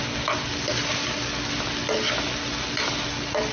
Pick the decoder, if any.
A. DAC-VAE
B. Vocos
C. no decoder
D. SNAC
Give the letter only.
C